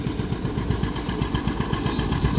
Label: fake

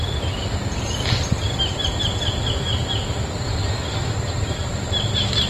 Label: real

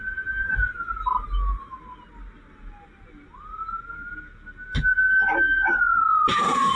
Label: real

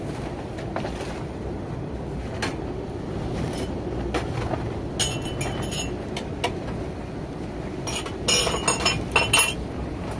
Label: real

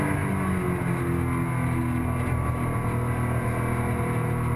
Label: real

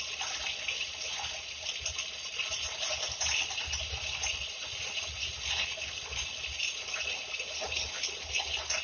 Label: real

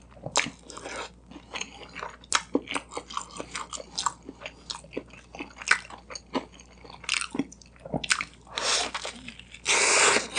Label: real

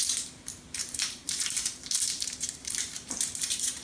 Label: fake